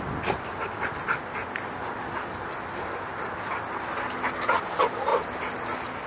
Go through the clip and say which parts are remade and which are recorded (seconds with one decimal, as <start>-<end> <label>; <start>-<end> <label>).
0.0-6.1 recorded